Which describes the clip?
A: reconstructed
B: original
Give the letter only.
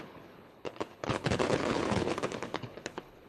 A